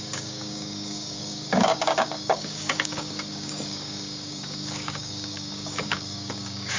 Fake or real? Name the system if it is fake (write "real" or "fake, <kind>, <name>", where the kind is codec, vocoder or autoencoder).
fake, codec, DAC